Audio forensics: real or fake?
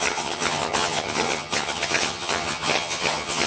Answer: fake